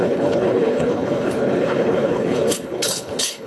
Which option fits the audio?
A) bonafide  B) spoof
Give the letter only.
B